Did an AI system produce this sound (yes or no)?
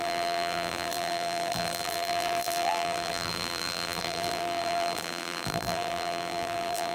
yes